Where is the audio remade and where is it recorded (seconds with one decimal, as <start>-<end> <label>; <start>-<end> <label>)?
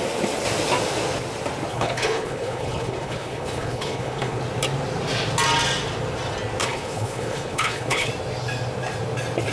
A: 0.0-1.7 recorded; 1.7-4.4 remade; 4.4-6.6 recorded; 6.6-8.1 remade; 8.1-9.5 recorded